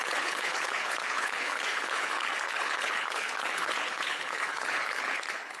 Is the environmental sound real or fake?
fake